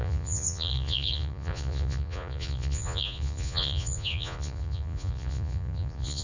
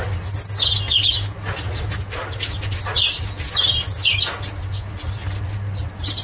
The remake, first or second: first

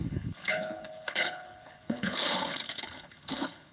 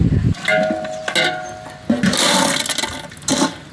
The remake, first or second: first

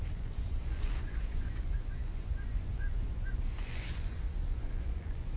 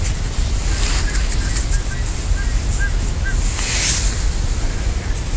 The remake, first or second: first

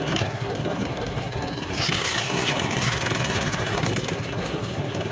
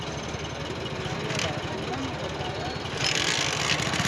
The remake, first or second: first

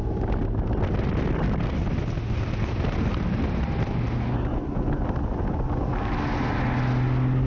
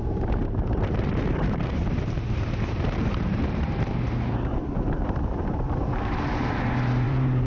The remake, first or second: second